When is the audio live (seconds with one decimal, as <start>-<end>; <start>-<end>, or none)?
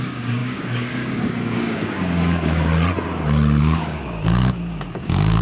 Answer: 2.7-3.6